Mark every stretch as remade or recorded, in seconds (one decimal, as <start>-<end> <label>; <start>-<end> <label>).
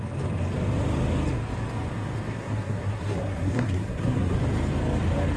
0.0-2.3 recorded; 2.3-4.4 remade; 4.4-5.4 recorded